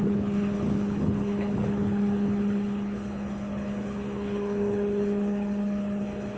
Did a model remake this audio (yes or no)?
yes